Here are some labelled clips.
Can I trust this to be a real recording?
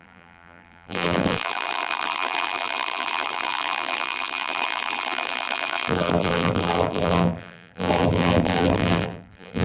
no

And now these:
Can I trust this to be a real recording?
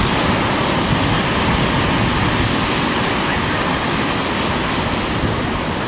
yes